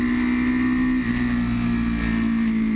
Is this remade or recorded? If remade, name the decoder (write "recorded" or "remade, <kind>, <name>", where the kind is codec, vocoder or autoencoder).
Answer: recorded